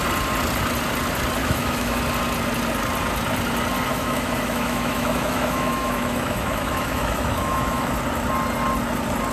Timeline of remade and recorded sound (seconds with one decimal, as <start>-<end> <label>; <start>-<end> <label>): 0.0-1.4 recorded; 1.4-2.0 remade; 2.0-3.9 recorded; 3.9-7.9 remade; 7.9-9.3 recorded